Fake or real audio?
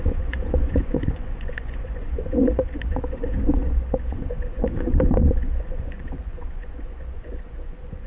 fake